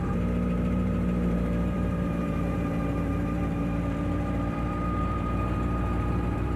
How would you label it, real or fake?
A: fake